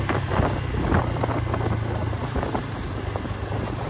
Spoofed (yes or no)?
no